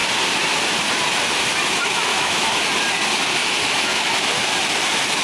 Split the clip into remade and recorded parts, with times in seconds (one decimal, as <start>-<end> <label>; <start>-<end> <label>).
0.0-2.1 recorded; 2.1-2.6 remade; 2.6-3.4 recorded; 3.4-4.3 remade; 4.3-5.2 recorded